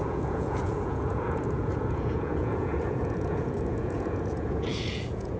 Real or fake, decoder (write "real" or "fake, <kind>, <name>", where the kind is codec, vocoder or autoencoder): fake, vocoder, Vocos